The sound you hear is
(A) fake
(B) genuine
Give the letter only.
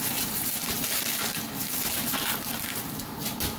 A